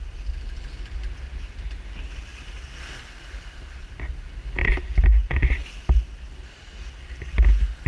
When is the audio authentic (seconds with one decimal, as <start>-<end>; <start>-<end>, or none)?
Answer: 0.0-7.9